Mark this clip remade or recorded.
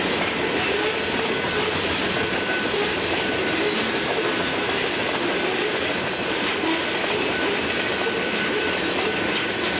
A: recorded